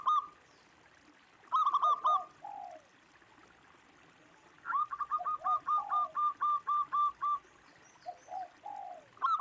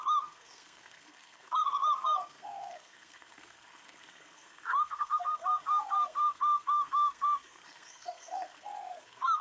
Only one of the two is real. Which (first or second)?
first